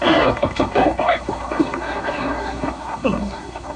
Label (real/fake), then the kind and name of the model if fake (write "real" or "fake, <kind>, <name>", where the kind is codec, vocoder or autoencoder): fake, codec, SNAC